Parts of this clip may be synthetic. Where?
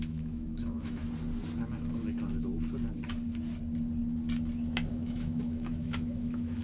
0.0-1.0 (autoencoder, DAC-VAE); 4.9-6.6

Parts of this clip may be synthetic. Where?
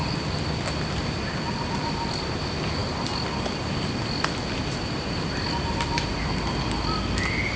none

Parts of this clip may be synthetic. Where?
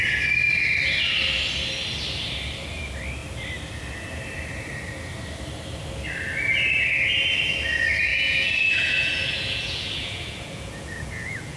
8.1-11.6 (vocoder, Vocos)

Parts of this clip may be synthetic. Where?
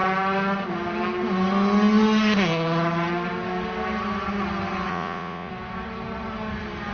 4.9-5.5 (vocoder, Vocos)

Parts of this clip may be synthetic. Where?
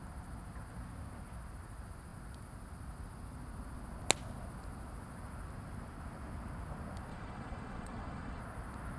7.1-8.4 (vocoder, Vocos)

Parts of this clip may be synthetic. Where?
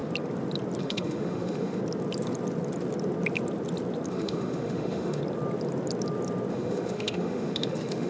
0.8-1.8 (autoencoder, DAC-VAE); 4.1-5.2; 6.5-8.1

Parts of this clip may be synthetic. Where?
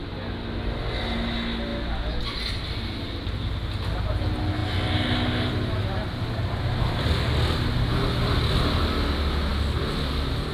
none